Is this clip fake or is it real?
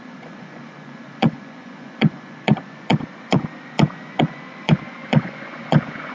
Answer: fake